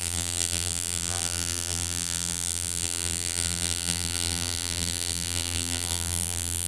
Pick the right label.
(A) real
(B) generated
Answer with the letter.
B